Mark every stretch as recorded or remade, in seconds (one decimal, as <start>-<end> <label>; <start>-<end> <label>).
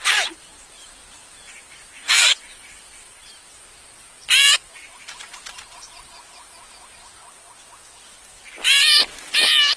0.0-1.6 recorded; 1.6-6.2 remade; 6.2-9.8 recorded